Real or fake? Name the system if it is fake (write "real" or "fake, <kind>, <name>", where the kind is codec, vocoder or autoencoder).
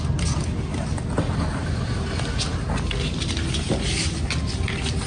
real